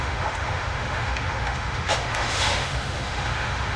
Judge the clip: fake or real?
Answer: fake